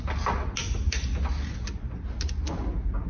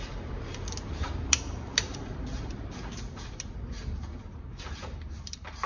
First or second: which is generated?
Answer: second